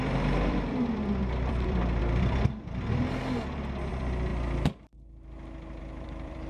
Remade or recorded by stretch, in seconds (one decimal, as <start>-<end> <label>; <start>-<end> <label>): 0.0-4.3 remade; 4.3-5.8 recorded; 5.8-6.5 remade

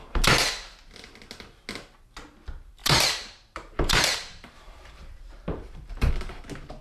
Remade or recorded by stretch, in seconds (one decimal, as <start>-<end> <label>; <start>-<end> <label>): 0.0-2.8 recorded; 2.8-6.1 remade; 6.1-6.8 recorded

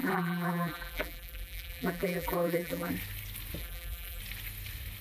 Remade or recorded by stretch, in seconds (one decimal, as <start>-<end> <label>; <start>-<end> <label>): 0.0-2.9 remade; 2.9-3.6 recorded; 3.6-4.2 remade; 4.2-5.0 recorded

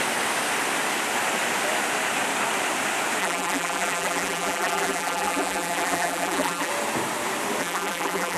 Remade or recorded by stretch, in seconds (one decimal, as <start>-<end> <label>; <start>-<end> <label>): 0.0-3.2 recorded; 3.2-6.7 remade; 6.7-7.6 recorded; 7.6-8.4 remade